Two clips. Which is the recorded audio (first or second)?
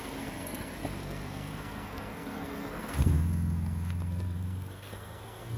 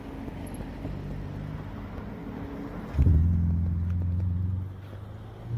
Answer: second